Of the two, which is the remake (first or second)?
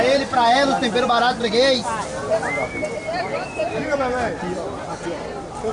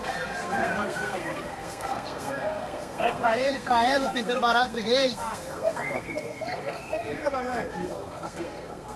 second